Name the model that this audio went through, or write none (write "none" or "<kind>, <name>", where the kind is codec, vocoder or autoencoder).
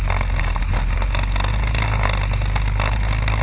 none